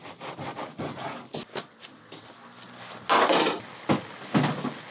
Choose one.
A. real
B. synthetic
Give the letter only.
A